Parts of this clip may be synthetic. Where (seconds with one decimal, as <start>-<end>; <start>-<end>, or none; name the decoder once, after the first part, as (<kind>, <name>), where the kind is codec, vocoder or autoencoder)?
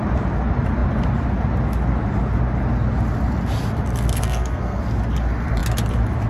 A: 4.1-4.8 (codec, SNAC)